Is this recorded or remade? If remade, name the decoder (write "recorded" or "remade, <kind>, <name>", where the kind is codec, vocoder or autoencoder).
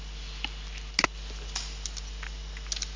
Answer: recorded